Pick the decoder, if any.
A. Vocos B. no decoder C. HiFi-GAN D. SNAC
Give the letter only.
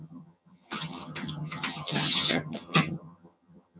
C